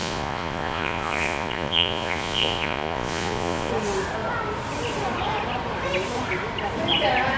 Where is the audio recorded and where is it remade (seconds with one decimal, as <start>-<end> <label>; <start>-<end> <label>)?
0.0-3.7 remade; 3.7-7.4 recorded